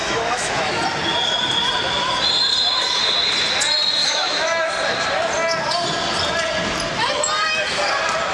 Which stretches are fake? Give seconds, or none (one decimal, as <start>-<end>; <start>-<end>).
0.0-0.7; 4.0-4.7